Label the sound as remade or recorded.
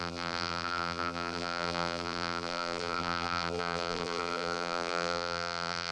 remade